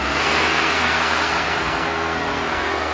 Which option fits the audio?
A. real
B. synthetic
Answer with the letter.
B